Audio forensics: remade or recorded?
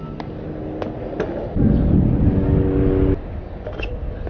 recorded